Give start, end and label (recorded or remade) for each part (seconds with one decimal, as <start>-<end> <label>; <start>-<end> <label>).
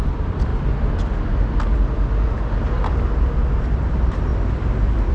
0.0-0.5 remade; 0.5-3.6 recorded; 3.6-4.3 remade; 4.3-5.1 recorded